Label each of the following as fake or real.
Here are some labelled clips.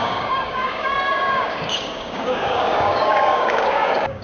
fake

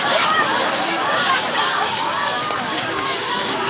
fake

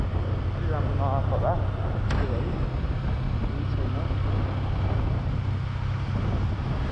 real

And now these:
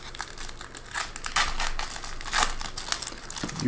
real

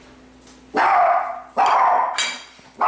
real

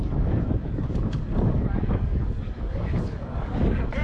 fake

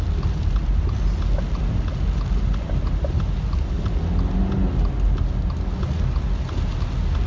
real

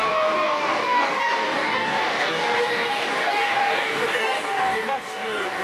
fake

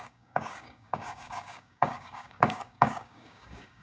fake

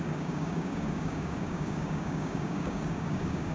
fake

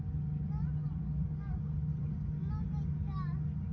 real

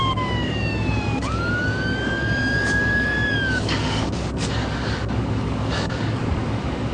fake